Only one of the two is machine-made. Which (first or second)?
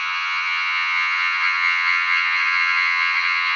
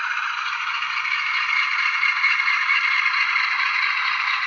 first